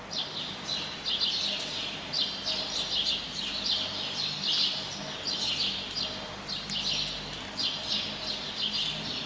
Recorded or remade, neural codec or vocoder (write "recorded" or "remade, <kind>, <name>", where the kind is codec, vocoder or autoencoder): recorded